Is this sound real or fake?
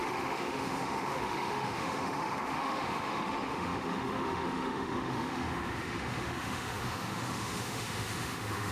fake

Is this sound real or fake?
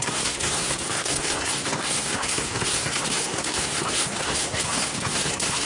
fake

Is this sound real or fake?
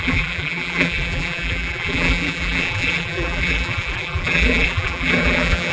fake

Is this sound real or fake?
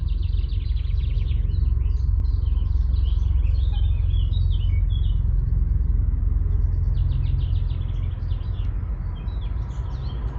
real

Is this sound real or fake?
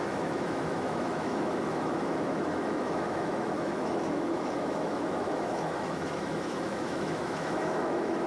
fake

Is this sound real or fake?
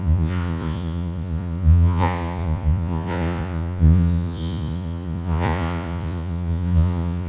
fake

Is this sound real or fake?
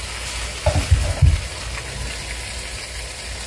real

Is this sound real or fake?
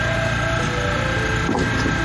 real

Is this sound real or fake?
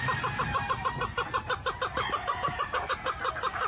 real